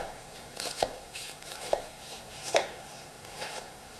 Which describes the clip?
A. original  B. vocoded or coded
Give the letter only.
B